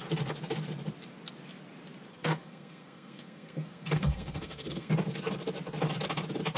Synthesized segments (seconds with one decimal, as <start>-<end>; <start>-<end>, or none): 2.1-4.9